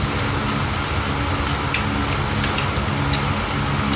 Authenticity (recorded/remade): recorded